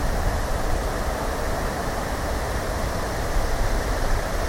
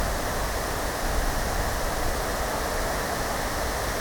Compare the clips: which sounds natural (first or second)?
second